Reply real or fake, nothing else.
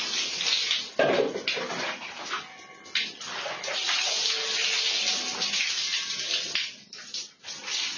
real